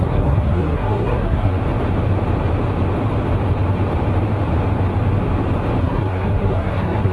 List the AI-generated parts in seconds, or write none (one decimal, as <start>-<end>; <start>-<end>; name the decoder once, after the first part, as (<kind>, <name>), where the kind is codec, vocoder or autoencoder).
0.0-1.6 (codec, SNAC); 5.8-7.1